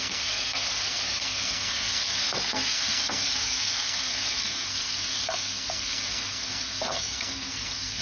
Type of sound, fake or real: fake